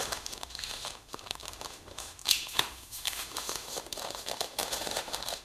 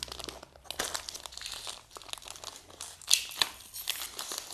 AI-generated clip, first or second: first